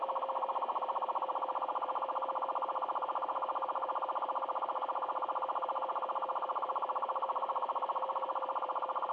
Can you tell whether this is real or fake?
real